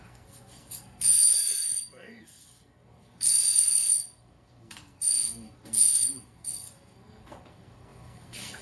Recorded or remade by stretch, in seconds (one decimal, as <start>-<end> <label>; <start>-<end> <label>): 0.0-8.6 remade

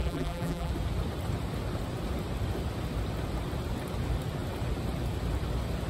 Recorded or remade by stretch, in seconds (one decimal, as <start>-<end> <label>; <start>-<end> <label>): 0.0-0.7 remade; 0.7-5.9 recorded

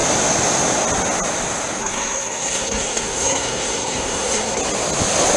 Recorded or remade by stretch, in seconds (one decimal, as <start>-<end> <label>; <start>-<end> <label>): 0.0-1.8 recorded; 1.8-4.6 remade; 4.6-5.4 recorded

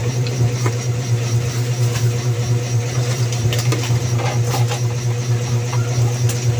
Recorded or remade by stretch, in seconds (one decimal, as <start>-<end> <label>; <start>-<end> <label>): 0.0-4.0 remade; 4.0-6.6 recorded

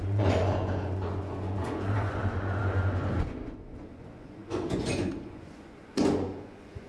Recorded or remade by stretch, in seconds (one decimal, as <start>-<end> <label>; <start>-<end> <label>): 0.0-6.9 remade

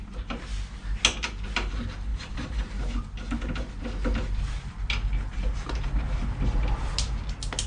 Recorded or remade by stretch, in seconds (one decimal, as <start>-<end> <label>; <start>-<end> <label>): 0.0-2.1 recorded; 2.1-2.8 remade; 2.8-7.7 recorded

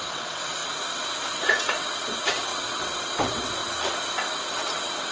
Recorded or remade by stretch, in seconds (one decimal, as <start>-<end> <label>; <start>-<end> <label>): 0.0-0.6 remade; 0.6-1.3 recorded; 1.3-3.6 remade; 3.6-4.5 recorded; 4.5-5.1 remade

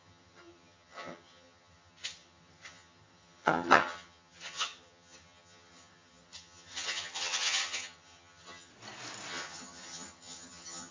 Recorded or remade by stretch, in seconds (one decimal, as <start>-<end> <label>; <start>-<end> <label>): 0.0-8.7 remade; 8.7-9.3 recorded; 9.3-10.9 remade